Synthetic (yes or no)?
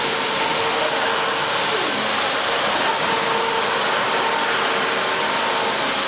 no